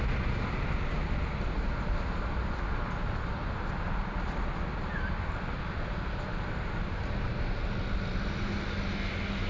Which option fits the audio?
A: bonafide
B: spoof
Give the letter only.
A